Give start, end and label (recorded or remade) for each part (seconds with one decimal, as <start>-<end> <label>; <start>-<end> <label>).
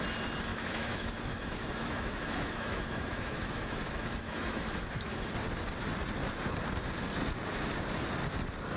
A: 0.0-0.5 recorded; 0.5-5.3 remade; 5.3-8.8 recorded